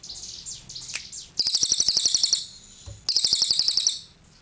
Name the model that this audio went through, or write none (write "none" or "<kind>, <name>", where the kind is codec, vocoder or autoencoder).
none